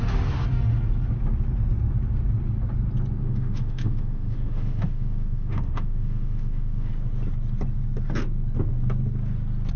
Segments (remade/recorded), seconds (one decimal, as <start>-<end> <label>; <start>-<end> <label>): 0.0-3.2 recorded; 3.2-6.9 remade; 6.9-9.8 recorded